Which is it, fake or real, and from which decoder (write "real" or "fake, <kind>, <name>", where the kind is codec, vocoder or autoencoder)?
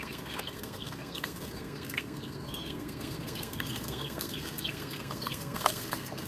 fake, codec, SNAC